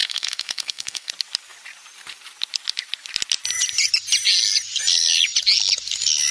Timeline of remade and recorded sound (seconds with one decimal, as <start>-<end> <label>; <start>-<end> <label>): 0.0-1.1 remade; 1.1-6.3 recorded